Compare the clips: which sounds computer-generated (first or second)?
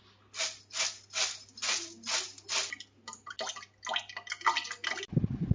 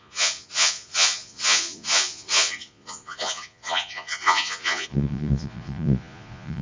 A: second